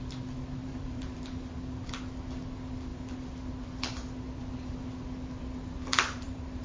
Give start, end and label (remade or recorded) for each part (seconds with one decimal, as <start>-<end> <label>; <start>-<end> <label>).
0.0-0.6 recorded; 0.6-1.2 remade; 1.2-5.9 recorded; 5.9-6.6 remade